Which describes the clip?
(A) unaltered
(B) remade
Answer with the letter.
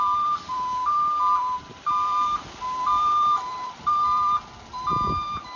B